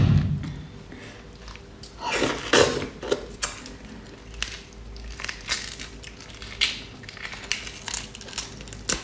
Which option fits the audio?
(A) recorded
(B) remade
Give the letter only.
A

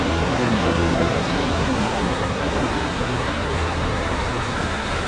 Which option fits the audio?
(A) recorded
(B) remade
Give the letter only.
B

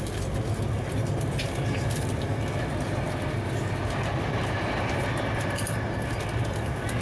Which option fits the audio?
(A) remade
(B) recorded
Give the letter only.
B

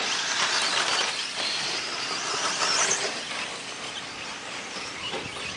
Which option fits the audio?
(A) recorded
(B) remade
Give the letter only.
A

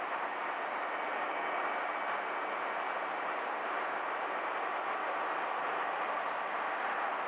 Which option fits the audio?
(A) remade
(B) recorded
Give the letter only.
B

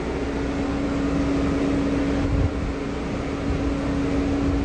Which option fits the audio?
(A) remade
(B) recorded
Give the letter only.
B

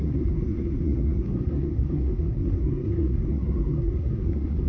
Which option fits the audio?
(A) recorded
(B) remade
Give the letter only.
B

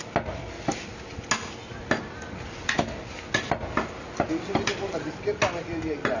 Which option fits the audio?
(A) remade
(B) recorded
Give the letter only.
B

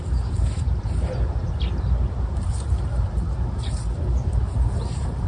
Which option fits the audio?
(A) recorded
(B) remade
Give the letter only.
A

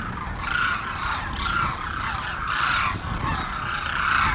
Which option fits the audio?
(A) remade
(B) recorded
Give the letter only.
B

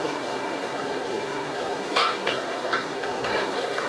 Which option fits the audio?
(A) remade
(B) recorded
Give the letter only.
A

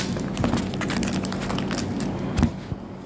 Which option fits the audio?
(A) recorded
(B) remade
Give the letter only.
A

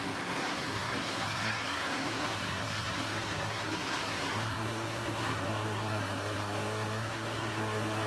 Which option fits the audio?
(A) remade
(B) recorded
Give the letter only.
A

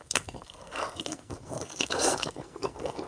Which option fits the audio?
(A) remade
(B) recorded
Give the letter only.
A